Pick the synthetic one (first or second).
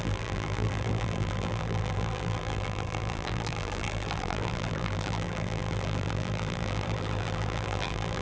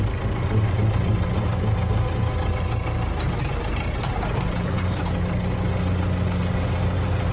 first